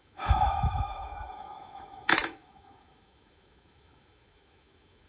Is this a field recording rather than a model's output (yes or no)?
no